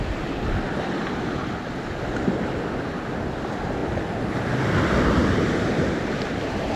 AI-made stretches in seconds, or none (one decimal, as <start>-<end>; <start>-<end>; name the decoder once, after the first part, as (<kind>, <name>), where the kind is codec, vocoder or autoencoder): none